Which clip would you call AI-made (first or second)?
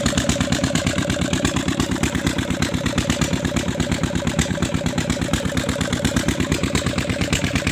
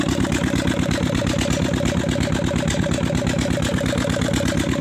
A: first